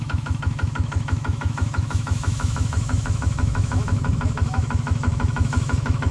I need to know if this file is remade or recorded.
remade